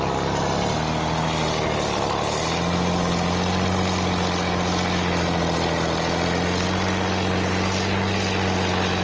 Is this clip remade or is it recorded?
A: recorded